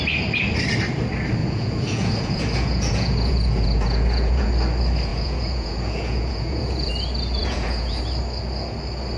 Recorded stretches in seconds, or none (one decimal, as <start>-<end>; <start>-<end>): 0.0-1.4; 4.5-5.1; 6.9-7.4; 8.0-9.2